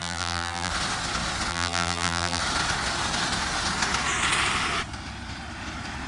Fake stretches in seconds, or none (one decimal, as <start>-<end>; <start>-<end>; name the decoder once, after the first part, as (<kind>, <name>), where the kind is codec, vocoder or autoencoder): 0.0-0.7 (vocoder, BigVGAN v2); 1.5-2.4